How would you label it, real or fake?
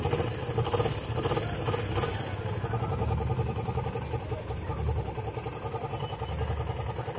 real